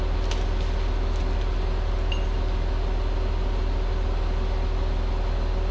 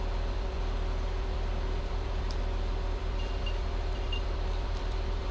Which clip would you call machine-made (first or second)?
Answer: second